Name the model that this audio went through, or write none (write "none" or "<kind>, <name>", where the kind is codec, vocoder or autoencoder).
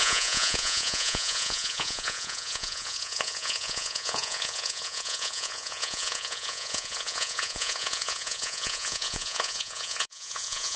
vocoder, Vocos